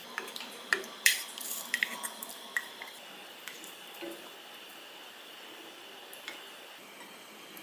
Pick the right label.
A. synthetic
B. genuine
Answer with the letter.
A